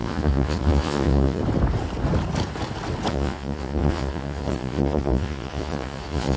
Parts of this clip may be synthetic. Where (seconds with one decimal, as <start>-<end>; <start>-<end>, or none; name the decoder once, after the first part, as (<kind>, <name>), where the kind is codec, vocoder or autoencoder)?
0.0-1.4 (vocoder, Vocos); 3.1-6.4